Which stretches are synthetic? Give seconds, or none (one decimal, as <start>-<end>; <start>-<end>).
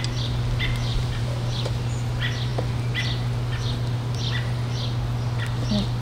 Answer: 0.9-1.8